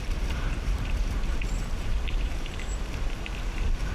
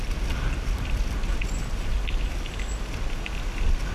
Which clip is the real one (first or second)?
second